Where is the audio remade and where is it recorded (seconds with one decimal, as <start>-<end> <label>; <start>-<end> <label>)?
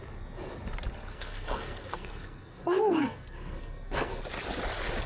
0.0-1.1 recorded; 1.1-4.2 remade; 4.2-5.1 recorded